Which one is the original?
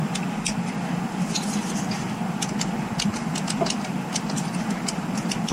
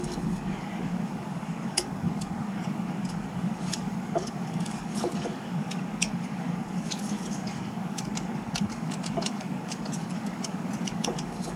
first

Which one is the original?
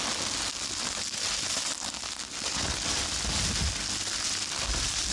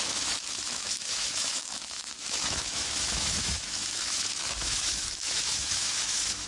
first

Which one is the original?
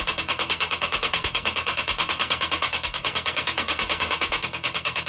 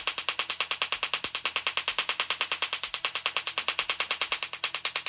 second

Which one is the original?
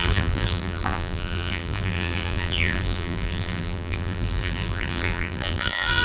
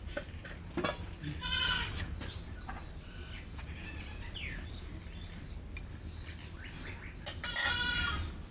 second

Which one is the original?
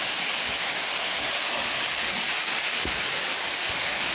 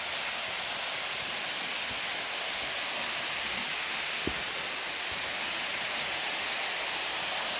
second